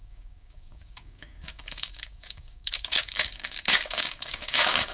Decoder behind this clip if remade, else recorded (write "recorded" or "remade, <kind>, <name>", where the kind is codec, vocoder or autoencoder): remade, codec, DAC